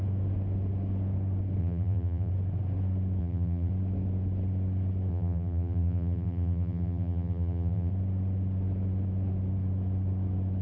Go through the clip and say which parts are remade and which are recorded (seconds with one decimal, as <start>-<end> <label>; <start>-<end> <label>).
0.0-1.6 recorded; 1.6-2.3 remade; 2.3-3.2 recorded; 3.2-3.7 remade; 3.7-5.1 recorded; 5.1-7.9 remade; 7.9-10.6 recorded